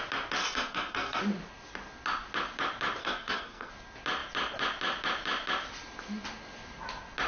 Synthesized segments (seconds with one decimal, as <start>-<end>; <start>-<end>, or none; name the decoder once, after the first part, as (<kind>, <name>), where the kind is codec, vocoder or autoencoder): 0.4-1.2 (codec, SNAC); 3.0-3.7